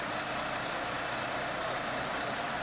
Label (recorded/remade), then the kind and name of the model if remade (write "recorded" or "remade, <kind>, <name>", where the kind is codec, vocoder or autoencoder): recorded